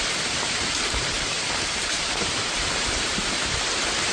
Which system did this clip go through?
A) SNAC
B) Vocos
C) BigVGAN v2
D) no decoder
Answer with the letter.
C